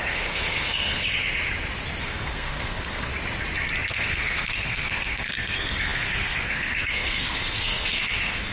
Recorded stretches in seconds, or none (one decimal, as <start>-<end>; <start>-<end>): 1.0-2.0; 3.1-3.9